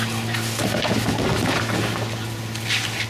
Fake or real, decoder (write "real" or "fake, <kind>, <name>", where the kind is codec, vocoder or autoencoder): real